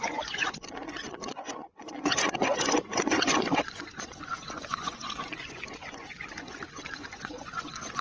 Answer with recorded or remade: remade